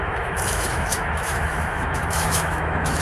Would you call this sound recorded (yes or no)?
no